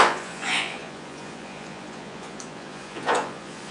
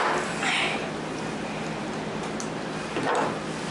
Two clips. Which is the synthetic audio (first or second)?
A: first